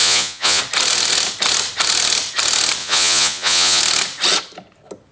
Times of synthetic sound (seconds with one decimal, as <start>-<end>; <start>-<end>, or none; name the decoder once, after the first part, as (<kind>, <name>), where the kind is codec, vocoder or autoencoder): 0.0-0.6 (vocoder, Vocos); 2.8-3.8